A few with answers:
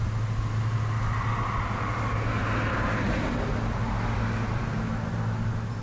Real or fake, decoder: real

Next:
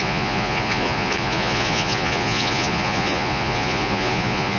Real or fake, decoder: fake, vocoder, Vocos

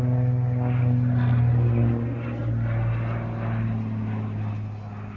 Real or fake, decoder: real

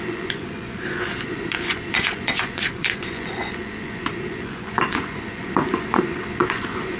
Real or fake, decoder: fake, vocoder, Vocos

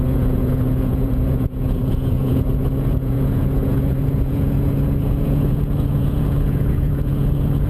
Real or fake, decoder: fake, vocoder, Vocos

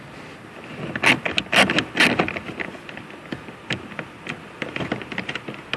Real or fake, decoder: real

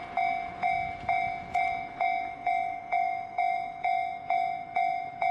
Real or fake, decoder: fake, vocoder, Vocos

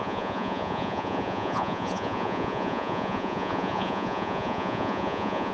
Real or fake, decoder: fake, vocoder, Vocos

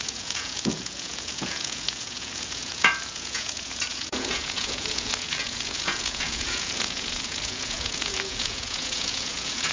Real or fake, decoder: fake, vocoder, Vocos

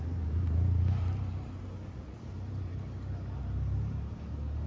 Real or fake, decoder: real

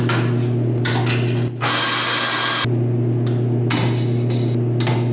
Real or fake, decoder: real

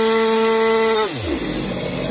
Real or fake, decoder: real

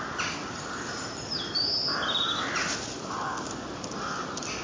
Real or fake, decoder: real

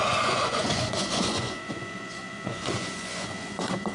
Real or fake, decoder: fake, vocoder, Vocos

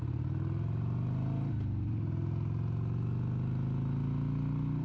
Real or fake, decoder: real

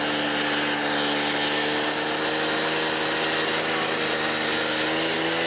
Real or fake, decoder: real